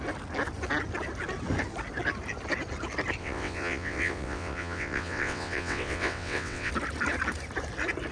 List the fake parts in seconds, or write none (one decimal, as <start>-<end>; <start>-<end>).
3.2-6.7